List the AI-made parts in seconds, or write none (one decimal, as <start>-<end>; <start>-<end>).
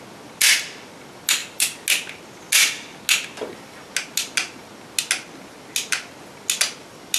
none